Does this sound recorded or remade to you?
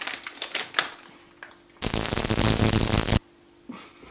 recorded